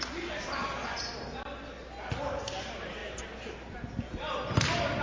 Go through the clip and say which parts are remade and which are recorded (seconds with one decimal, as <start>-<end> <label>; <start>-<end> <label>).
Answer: 0.0-5.0 recorded